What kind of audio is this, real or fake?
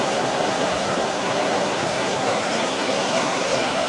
fake